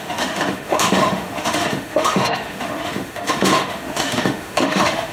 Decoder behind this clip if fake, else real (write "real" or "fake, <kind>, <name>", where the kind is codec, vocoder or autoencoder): fake, autoencoder, DAC-VAE